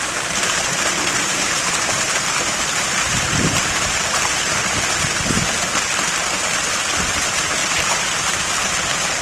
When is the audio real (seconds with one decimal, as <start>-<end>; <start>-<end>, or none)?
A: 0.0-1.3; 4.4-7.6